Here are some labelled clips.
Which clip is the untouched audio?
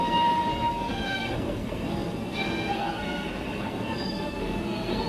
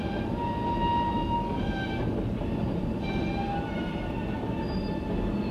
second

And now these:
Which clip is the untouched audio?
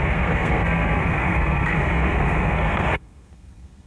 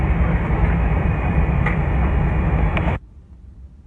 second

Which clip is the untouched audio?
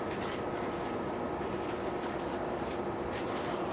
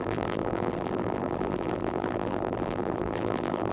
first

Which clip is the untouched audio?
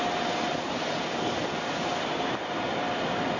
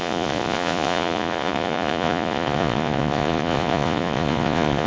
first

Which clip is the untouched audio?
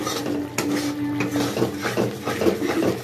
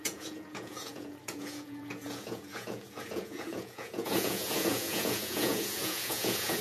first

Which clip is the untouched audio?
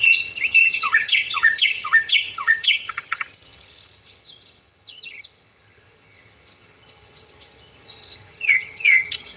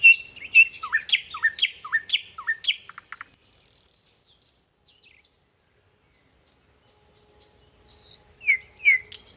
second